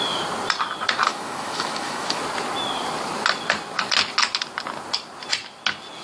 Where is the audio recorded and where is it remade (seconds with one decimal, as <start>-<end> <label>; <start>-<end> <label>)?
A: 0.0-1.1 recorded; 1.1-2.2 remade; 2.2-6.0 recorded

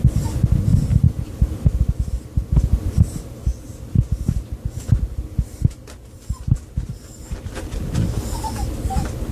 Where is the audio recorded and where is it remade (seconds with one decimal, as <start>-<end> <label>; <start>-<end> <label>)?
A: 0.0-3.5 recorded; 3.5-6.8 remade; 6.8-9.3 recorded